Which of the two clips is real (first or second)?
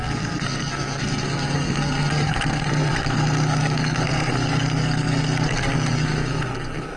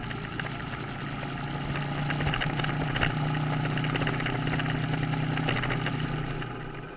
second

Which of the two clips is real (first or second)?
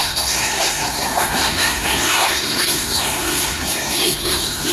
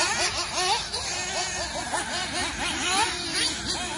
second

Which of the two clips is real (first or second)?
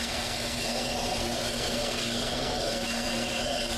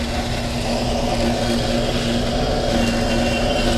second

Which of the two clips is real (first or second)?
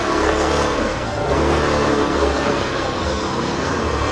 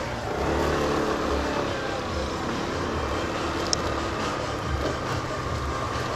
second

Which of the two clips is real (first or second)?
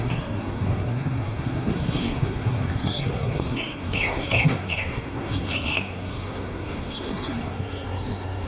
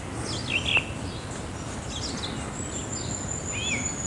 second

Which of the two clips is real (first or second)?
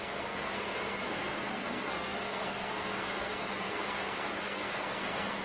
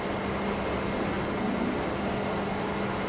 second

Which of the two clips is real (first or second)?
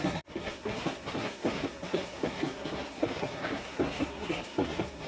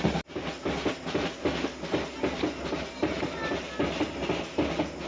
second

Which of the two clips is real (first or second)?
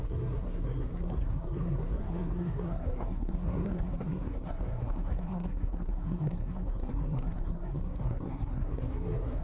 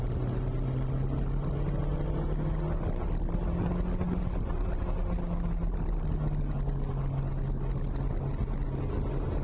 second